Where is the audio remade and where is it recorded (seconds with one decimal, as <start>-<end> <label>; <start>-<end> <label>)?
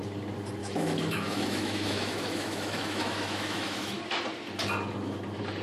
0.0-0.6 recorded; 0.6-4.0 remade; 4.0-5.6 recorded